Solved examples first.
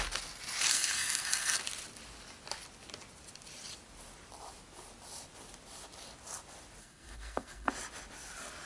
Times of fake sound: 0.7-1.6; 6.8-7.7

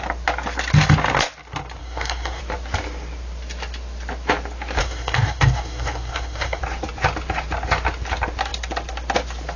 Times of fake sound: 1.8-2.4; 4.8-6.6

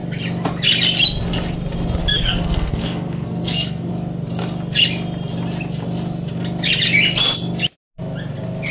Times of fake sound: 2.0-3.9

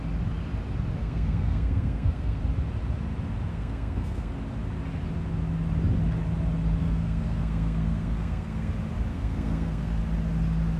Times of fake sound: 1.0-2.4; 3.5-4.3; 6.8-8.7; 9.1-10.0

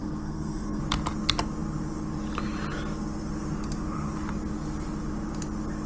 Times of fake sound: 0.0-0.8

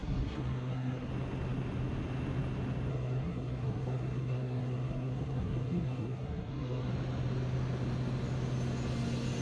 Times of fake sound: 0.0-1.1; 2.9-6.9

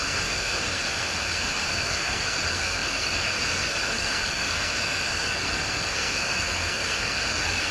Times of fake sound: 0.0-7.7